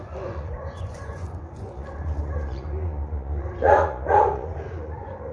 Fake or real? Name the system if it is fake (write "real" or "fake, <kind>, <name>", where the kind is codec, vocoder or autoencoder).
fake, vocoder, Vocos